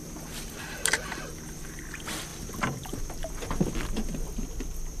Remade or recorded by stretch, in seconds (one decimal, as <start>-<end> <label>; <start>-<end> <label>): 0.0-1.8 remade; 1.8-2.3 recorded; 2.3-3.0 remade; 3.0-5.0 recorded